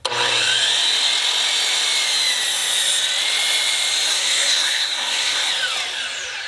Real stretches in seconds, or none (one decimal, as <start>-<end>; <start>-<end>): 0.0-4.1; 5.5-6.5